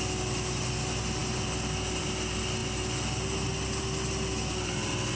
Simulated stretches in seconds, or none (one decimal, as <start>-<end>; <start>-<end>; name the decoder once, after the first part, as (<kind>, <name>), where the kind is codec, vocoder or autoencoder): none